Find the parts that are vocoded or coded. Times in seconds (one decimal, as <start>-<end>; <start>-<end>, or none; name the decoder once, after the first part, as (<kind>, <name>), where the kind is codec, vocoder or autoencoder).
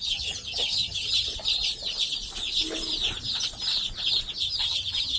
0.0-1.3 (vocoder, HiFi-GAN); 4.4-5.2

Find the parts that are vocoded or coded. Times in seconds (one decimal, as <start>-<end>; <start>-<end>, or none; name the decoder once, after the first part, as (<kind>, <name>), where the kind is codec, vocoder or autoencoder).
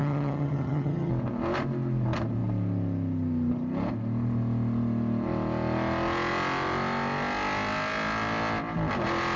0.0-1.1 (vocoder, HiFi-GAN)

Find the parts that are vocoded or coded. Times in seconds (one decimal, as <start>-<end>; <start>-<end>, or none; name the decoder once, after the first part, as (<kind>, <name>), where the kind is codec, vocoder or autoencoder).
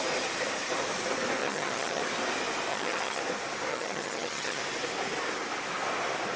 1.4-2.0 (vocoder, HiFi-GAN); 2.7-3.2; 3.7-4.6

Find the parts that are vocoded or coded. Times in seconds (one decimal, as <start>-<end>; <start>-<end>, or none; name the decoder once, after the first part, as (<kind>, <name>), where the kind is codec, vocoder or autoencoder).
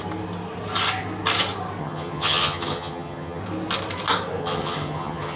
1.8-3.4 (vocoder, HiFi-GAN); 4.4-5.4